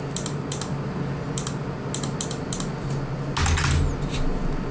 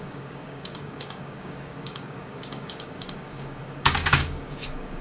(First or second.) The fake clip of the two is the second